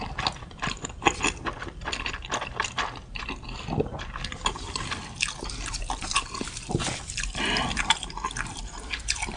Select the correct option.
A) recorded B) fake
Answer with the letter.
B